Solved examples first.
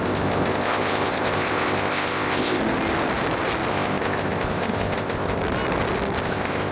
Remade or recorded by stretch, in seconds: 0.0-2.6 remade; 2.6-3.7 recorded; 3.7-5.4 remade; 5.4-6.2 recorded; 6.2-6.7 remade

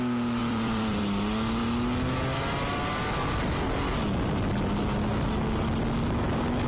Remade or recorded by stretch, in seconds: 0.0-0.4 recorded; 0.4-1.0 remade; 1.0-6.7 recorded

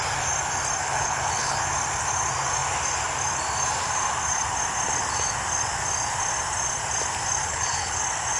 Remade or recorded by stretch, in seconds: 0.0-0.8 recorded; 0.8-1.6 remade; 1.6-7.4 recorded; 7.4-8.0 remade; 8.0-8.4 recorded

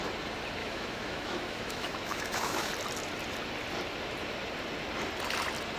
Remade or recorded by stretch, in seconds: 0.0-0.6 recorded; 0.6-2.7 remade; 2.7-5.8 recorded

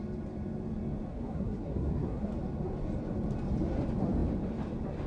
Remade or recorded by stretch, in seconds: 0.0-1.1 recorded; 1.1-2.3 remade; 2.3-5.1 recorded

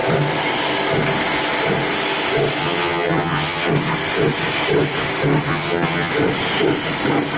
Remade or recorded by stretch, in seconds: 0.0-2.6 recorded; 2.6-3.7 remade; 3.7-5.5 recorded; 5.5-6.1 remade; 6.1-7.4 recorded

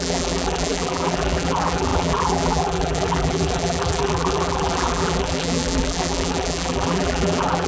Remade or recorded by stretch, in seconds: 0.0-7.7 remade

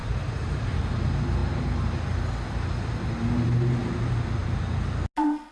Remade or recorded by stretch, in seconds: 0.0-0.7 remade; 0.7-4.4 recorded; 4.4-4.9 remade; 4.9-5.5 recorded